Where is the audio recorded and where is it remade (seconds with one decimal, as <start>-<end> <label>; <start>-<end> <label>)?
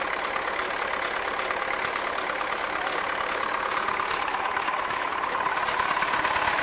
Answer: 0.0-4.3 recorded; 4.3-5.1 remade; 5.1-6.6 recorded